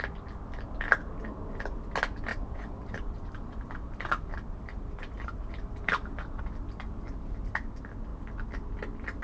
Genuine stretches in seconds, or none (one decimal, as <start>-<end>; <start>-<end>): 0.0-2.3; 6.4-9.2